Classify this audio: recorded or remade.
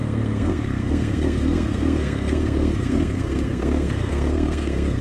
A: remade